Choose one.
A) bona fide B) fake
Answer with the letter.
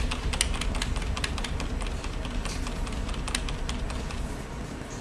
A